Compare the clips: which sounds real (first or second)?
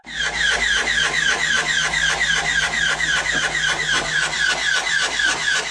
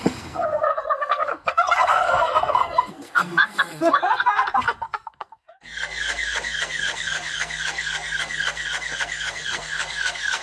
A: first